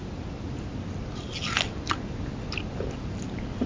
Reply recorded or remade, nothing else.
recorded